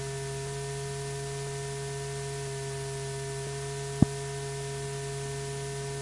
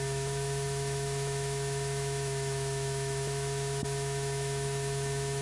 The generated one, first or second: second